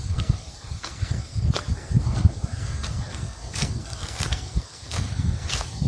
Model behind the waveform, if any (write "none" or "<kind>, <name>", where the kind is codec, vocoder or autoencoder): codec, SNAC